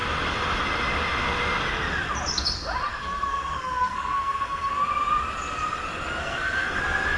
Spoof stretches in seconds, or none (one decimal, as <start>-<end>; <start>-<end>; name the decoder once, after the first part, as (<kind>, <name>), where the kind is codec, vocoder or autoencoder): 2.9-4.7 (codec, SNAC); 6.2-6.8